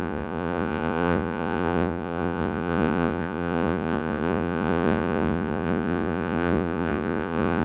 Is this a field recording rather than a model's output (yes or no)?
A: no